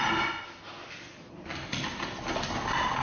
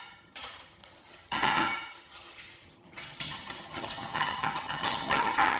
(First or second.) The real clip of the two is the first